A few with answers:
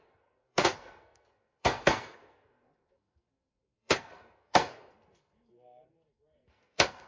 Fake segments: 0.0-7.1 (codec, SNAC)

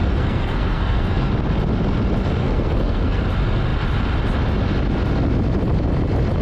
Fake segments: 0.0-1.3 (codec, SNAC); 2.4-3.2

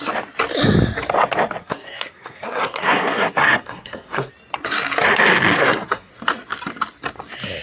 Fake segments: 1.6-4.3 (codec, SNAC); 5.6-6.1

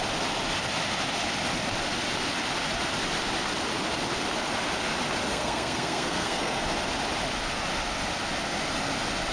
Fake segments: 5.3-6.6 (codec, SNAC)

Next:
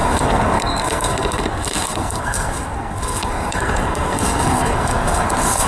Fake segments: 0.0-5.7 (codec, SNAC)

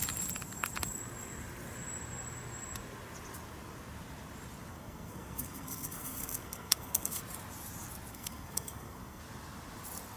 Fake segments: 4.7-7.2 (codec, SNAC); 8.1-9.2